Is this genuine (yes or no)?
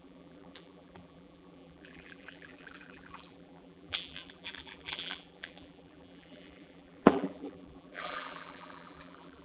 no